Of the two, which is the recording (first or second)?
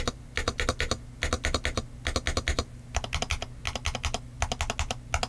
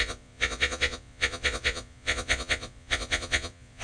first